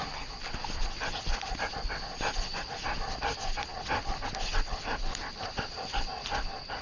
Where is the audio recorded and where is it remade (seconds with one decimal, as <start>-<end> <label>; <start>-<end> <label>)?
0.0-6.8 recorded